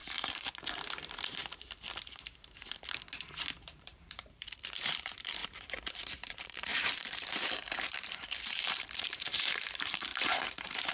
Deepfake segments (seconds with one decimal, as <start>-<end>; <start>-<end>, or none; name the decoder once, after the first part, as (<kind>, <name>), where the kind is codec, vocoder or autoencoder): 3.6-5.4 (vocoder, BigVGAN v2); 5.9-10.9